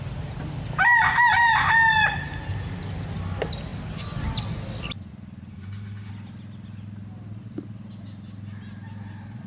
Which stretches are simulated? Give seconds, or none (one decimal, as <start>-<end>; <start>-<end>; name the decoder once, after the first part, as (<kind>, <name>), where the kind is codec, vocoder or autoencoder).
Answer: 5.5-6.1 (autoencoder, DAC-VAE)